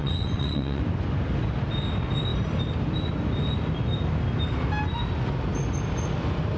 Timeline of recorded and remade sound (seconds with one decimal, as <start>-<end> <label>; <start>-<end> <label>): 0.0-0.8 remade; 0.8-6.6 recorded